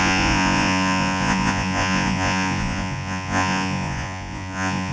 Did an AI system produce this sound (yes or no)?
yes